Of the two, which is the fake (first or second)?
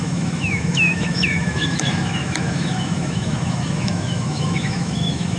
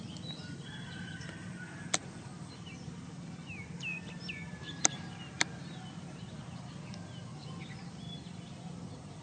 first